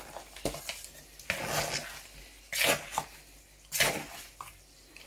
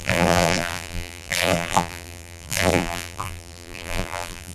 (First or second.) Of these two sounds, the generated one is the second